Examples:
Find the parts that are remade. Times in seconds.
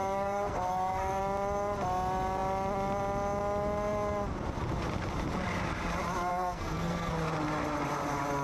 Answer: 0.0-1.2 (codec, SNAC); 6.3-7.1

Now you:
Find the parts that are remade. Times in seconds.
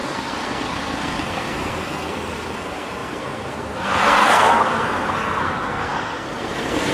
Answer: 0.0-6.9 (codec, SNAC)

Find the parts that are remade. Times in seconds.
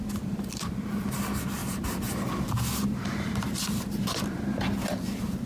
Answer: none